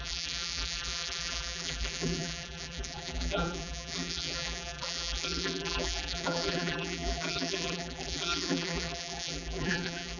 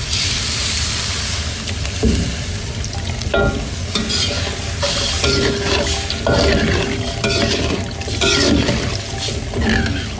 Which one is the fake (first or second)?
first